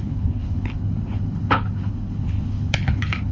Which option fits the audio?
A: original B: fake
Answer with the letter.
B